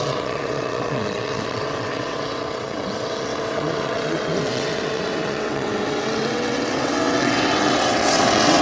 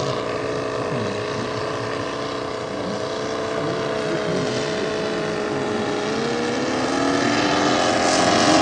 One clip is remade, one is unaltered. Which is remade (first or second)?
first